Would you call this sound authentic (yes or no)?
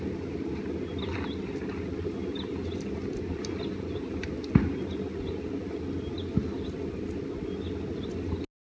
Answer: yes